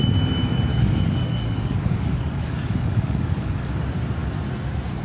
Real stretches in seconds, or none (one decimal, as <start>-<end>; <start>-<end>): 0.0-0.7; 3.7-5.0